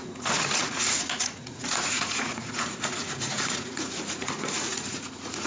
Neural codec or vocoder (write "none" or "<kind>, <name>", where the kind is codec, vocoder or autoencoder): vocoder, Vocos